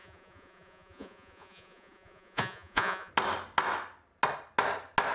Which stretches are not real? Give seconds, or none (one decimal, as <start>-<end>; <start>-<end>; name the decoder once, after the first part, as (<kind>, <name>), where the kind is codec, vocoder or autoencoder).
0.0-3.1 (vocoder, Vocos)